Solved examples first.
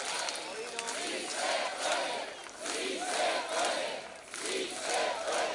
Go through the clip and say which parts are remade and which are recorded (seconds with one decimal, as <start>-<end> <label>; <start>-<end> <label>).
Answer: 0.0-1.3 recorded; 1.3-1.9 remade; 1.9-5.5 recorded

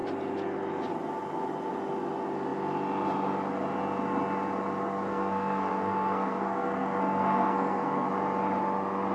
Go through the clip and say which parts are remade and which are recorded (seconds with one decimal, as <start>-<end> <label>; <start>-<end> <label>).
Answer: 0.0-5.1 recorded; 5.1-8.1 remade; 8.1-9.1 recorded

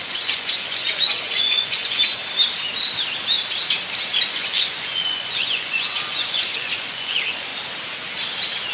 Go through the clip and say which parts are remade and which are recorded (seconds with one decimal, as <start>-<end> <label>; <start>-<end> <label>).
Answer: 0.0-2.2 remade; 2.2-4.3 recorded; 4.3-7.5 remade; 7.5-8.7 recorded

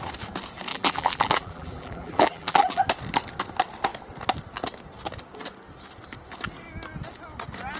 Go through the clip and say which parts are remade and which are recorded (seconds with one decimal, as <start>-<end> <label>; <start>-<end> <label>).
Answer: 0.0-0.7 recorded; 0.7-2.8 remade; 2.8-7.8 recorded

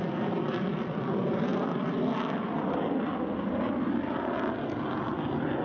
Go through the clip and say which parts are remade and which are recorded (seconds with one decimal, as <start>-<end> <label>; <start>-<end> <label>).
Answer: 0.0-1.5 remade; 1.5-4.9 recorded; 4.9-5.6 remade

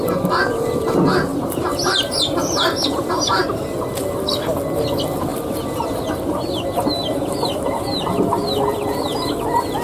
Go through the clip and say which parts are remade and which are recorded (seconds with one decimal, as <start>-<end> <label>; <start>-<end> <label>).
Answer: 0.0-1.3 recorded; 1.3-3.4 remade; 3.4-5.3 recorded; 5.3-5.9 remade; 5.9-6.4 recorded; 6.4-7.7 remade; 7.7-9.8 recorded

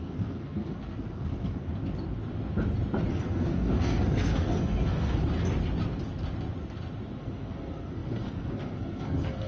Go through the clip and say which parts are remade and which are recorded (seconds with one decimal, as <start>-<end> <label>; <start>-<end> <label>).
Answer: 0.0-1.7 remade; 1.7-3.1 recorded; 3.1-5.2 remade; 5.2-7.2 recorded; 7.2-9.5 remade